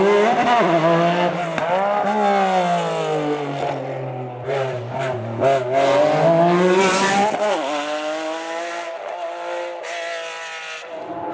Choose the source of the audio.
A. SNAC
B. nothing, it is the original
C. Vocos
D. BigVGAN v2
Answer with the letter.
B